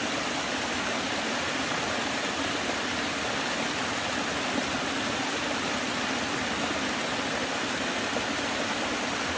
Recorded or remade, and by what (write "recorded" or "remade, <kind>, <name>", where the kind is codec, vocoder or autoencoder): recorded